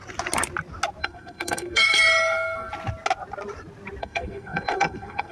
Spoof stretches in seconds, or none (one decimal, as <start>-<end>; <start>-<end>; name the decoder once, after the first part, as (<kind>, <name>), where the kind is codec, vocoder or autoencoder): 1.0-2.7 (codec, SNAC); 4.0-5.3